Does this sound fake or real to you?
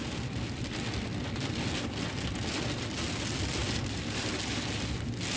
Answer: real